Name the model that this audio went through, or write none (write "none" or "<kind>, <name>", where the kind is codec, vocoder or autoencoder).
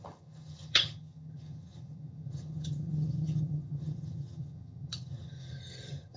vocoder, HiFi-GAN